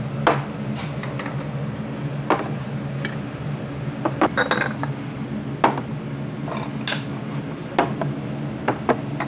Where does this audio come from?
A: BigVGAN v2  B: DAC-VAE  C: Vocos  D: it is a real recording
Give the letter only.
D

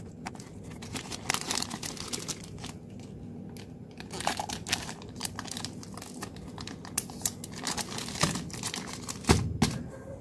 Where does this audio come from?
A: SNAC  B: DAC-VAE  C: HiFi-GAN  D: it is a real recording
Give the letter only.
D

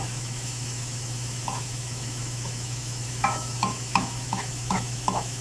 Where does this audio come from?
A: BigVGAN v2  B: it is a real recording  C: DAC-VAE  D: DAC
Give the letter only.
C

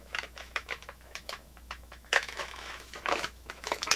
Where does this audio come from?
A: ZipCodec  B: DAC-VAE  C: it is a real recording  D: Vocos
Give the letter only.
B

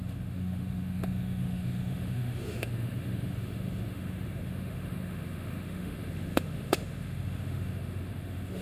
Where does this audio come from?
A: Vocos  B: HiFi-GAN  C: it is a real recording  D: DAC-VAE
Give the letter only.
D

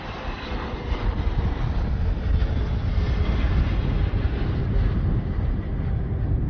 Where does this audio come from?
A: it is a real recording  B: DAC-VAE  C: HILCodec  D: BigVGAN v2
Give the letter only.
A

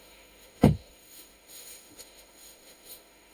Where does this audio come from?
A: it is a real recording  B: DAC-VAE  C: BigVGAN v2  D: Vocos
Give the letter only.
B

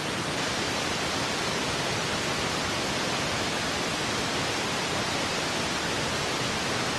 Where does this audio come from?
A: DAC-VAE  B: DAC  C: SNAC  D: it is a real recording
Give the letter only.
D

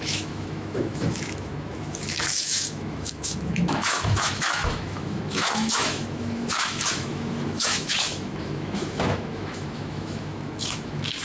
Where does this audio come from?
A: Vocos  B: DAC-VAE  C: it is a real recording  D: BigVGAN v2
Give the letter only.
B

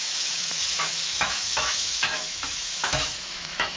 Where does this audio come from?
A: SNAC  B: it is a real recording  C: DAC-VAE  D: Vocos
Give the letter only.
C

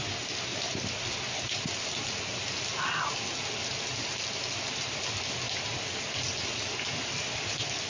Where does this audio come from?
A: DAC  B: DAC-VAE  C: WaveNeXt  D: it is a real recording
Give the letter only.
D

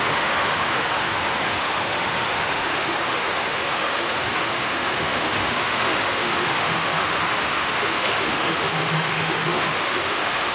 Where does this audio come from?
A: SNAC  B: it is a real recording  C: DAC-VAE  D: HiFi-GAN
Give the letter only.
C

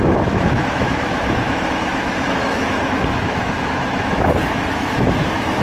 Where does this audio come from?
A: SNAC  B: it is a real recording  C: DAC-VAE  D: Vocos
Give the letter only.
C